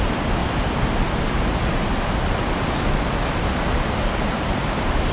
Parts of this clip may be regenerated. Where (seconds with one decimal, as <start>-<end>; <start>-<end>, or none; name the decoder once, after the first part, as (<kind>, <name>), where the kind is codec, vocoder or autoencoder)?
0.0-0.4 (vocoder, BigVGAN v2); 3.5-5.1